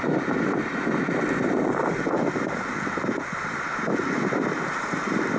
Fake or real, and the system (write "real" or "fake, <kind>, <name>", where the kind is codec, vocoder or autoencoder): real